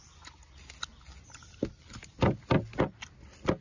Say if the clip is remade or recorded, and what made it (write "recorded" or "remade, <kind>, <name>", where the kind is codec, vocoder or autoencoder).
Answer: recorded